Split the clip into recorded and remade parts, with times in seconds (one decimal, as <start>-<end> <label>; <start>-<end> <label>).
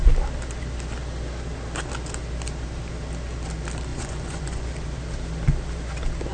0.0-3.9 recorded; 3.9-4.7 remade; 4.7-6.3 recorded